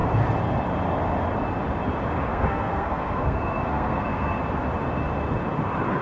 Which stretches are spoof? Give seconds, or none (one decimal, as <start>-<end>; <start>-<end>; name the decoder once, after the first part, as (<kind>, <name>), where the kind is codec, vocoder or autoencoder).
2.3-4.4 (codec, SNAC)